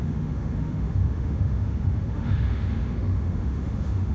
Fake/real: fake